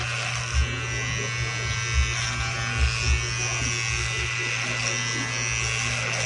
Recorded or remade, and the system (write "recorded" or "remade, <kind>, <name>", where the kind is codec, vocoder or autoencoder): recorded